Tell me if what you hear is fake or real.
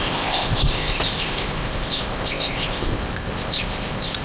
fake